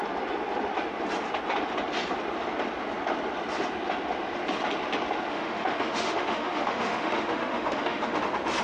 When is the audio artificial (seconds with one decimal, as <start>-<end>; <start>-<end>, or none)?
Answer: 5.3-8.2